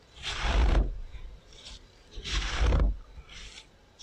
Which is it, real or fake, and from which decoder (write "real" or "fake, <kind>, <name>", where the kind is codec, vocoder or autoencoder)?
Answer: fake, vocoder, BigVGAN v2